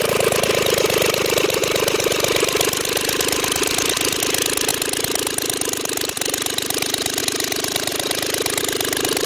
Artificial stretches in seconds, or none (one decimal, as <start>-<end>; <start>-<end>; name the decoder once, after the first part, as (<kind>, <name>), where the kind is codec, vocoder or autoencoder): none